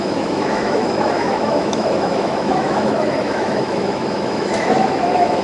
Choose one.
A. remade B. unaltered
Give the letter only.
A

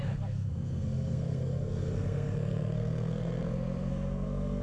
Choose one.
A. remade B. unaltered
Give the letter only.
A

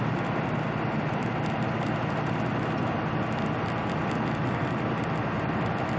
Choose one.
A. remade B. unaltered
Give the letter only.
B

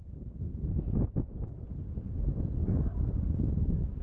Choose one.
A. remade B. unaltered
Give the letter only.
B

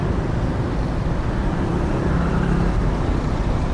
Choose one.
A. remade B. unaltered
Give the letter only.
B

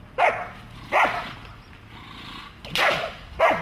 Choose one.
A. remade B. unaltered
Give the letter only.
B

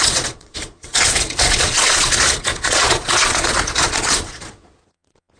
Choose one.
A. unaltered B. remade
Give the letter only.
B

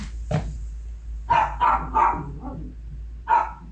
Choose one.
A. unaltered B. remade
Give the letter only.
A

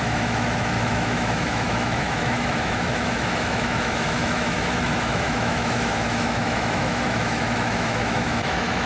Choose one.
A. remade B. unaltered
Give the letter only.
A